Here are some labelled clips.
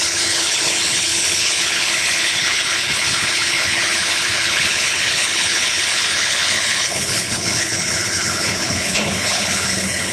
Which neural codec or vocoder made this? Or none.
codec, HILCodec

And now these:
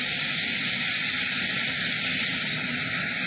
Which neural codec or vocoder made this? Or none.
none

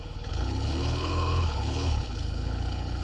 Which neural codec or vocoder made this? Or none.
codec, HILCodec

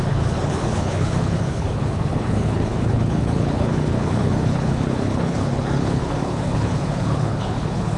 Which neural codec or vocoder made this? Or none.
codec, HILCodec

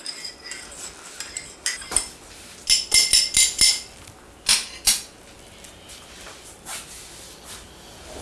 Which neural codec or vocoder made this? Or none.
none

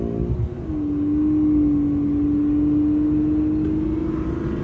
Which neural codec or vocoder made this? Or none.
none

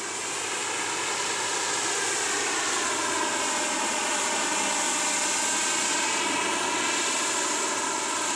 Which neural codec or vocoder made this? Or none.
none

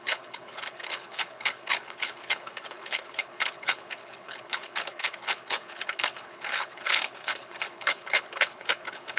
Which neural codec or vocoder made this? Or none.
codec, HILCodec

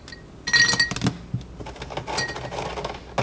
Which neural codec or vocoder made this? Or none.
none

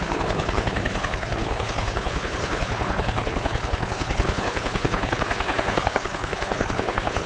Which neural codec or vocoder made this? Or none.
codec, HILCodec